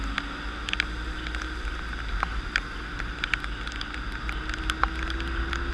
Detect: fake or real real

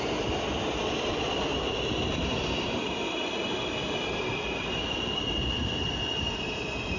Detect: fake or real real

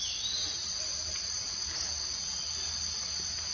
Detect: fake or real real